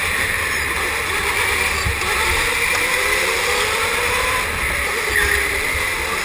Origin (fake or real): real